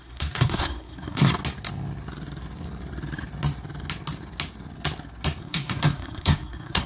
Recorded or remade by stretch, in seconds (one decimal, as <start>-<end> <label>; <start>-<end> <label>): 0.0-1.3 remade; 1.3-5.4 recorded; 5.4-6.9 remade